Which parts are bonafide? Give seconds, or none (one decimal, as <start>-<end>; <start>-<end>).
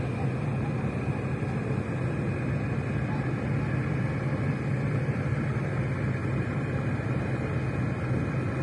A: 0.0-6.2; 7.2-8.6